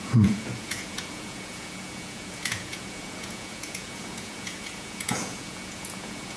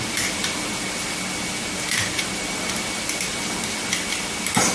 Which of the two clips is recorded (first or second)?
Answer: second